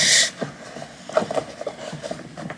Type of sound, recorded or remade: recorded